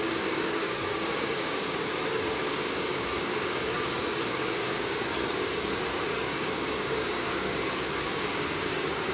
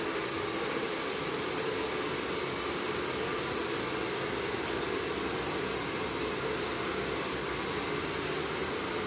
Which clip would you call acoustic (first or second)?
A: second